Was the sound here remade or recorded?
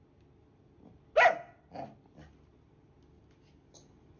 recorded